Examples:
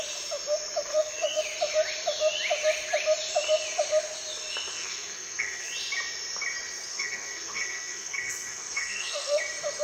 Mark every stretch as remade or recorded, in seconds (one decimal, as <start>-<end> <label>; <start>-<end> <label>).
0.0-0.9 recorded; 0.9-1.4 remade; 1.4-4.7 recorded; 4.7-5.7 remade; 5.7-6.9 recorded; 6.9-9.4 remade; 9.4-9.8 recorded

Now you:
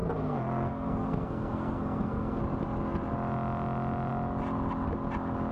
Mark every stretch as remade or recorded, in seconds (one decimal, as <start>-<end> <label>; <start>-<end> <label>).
0.0-2.4 remade; 2.4-5.5 recorded

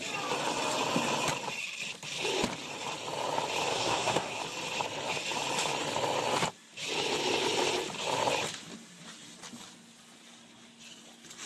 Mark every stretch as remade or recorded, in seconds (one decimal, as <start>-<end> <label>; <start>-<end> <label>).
0.0-3.7 recorded; 3.7-4.4 remade; 4.4-11.5 recorded

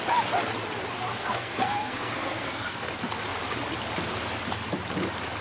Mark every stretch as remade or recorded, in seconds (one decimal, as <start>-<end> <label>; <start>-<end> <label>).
0.0-1.1 recorded; 1.1-2.9 remade; 2.9-5.4 recorded

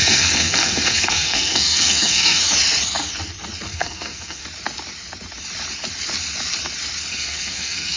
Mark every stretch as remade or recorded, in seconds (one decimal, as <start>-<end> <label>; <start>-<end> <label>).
0.0-2.4 remade; 2.4-3.7 recorded; 3.7-4.4 remade; 4.4-7.1 recorded; 7.1-8.0 remade

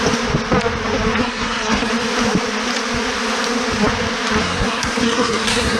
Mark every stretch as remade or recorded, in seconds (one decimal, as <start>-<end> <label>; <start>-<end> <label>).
0.0-1.2 recorded; 1.2-1.9 remade; 1.9-4.4 recorded; 4.4-5.8 remade

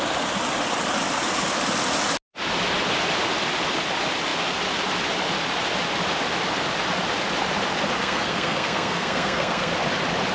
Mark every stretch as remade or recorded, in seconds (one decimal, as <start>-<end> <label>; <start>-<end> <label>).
0.0-8.0 recorded; 8.0-9.7 remade; 9.7-10.3 recorded